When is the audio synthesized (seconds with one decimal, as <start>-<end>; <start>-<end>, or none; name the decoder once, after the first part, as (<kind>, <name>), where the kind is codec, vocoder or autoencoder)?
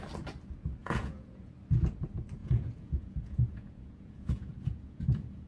0.8-1.5 (vocoder, Vocos); 2.4-5.5